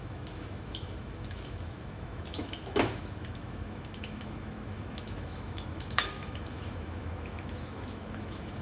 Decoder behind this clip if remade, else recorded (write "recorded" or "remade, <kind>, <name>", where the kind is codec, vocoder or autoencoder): remade, autoencoder, DAC-VAE